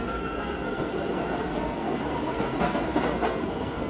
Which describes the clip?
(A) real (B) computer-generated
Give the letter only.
B